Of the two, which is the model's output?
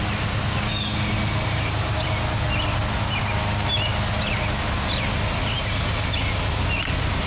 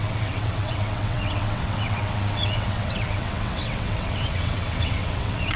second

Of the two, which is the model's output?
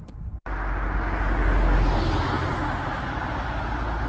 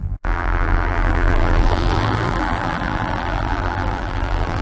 second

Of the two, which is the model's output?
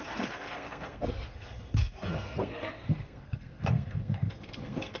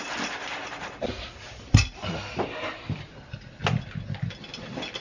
first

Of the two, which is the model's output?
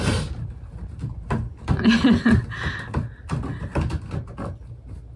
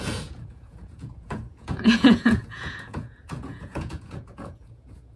second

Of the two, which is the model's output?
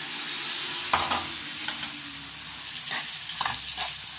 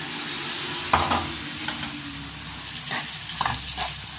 second